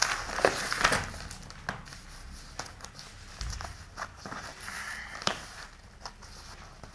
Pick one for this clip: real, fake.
real